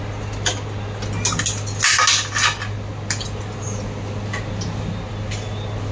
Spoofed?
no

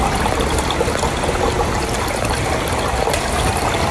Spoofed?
no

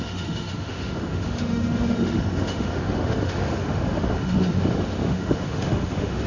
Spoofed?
yes